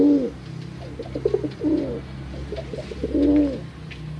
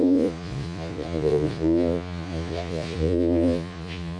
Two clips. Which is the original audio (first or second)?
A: first